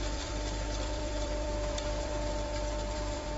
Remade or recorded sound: remade